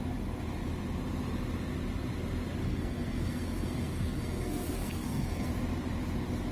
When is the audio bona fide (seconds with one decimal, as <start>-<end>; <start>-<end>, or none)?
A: 0.0-2.6; 5.5-6.5